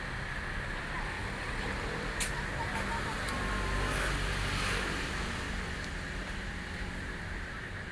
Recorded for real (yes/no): yes